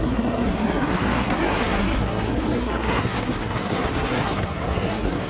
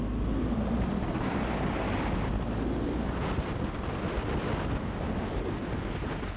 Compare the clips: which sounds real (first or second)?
second